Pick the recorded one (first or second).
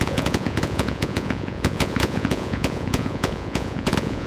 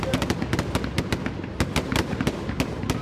second